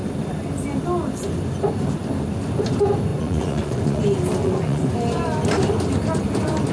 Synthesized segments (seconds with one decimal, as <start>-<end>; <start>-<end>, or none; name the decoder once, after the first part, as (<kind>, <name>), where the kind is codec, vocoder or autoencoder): 3.1-4.0 (vocoder, Vocos); 4.4-4.9